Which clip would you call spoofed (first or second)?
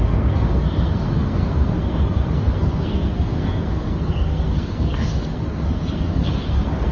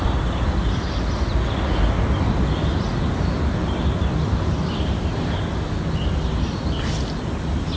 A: first